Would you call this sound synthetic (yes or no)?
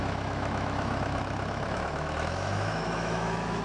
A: yes